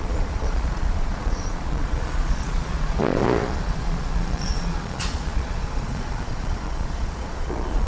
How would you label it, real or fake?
fake